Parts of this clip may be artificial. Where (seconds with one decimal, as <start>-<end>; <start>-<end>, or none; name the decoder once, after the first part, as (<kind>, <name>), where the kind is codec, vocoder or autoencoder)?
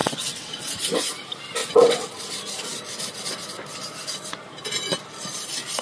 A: 0.0-0.8 (vocoder, WaveNeXt); 1.6-2.1